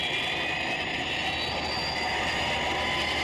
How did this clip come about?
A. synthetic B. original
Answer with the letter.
B